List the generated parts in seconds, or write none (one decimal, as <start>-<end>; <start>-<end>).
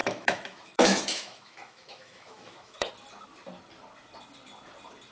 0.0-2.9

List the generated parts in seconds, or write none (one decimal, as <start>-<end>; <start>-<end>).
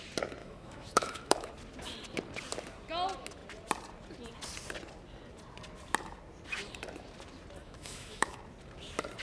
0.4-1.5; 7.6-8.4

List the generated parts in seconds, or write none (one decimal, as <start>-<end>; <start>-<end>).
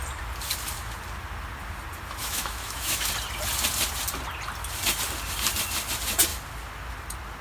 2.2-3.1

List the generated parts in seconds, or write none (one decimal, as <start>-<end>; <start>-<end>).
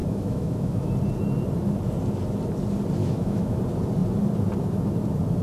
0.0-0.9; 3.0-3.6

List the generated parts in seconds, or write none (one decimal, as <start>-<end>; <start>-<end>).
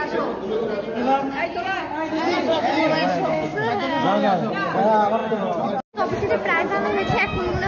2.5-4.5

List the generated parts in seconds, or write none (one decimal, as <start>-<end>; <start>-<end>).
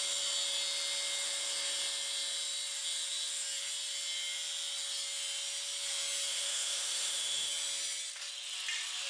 6.3-7.5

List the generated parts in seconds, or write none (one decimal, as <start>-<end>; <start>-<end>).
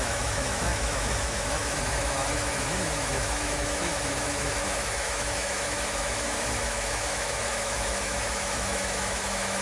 0.0-9.6